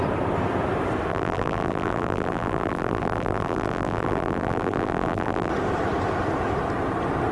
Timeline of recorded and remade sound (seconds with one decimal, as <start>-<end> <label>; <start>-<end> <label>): 0.0-1.1 recorded; 1.1-5.5 remade; 5.5-7.3 recorded